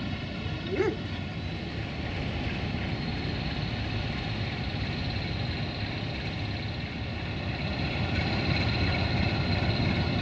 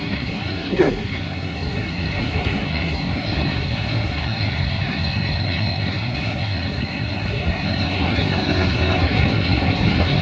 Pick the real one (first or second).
first